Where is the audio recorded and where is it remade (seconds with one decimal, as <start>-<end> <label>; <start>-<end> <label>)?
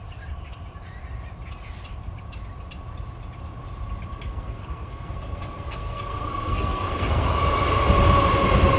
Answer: 0.0-4.1 recorded; 4.1-7.4 remade; 7.4-8.8 recorded